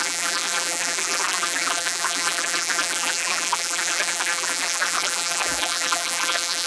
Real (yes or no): no